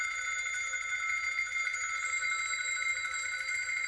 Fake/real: real